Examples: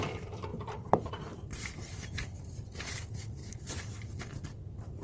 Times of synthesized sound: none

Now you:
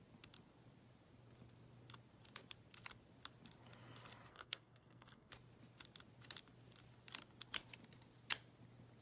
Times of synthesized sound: 4.3-5.3 (codec, SNAC)

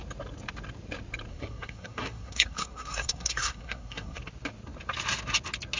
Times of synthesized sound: 1.3-4.2 (codec, SNAC)

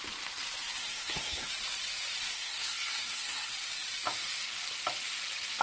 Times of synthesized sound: 0.8-1.5 (codec, SNAC); 2.3-3.5

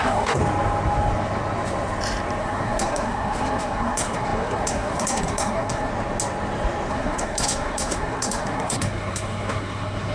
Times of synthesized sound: 0.0-0.4 (codec, SNAC); 2.4-5.9; 6.9-10.1

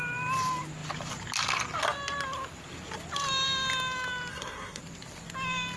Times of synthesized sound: 4.3-4.8 (codec, SNAC)

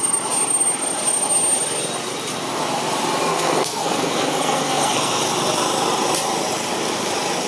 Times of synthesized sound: 3.3-5.2 (codec, SNAC)

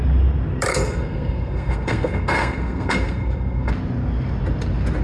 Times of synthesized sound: 0.7-3.7 (codec, SNAC)